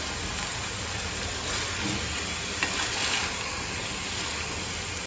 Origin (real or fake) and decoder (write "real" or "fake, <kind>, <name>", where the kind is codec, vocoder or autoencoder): real